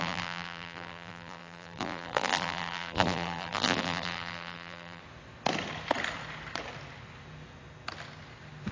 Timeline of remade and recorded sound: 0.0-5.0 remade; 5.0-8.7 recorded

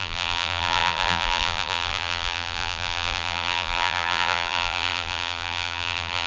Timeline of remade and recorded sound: 0.0-6.3 remade

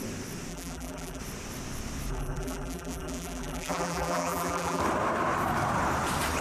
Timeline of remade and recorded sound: 0.0-0.5 recorded; 0.5-1.2 remade; 1.2-2.1 recorded; 2.1-4.8 remade; 4.8-6.4 recorded

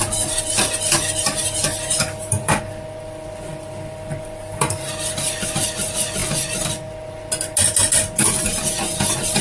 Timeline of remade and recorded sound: 0.0-6.2 remade; 6.2-8.6 recorded; 8.6-9.4 remade

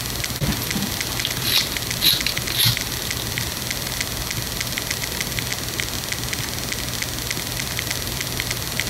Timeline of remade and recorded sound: 0.0-5.5 remade; 5.5-7.2 recorded; 7.2-8.9 remade

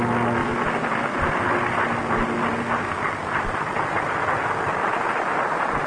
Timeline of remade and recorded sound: 0.0-0.4 recorded; 0.4-1.4 remade; 1.4-4.8 recorded; 4.8-5.9 remade

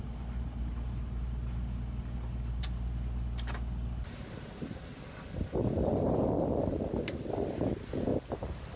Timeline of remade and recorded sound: 0.0-8.8 recorded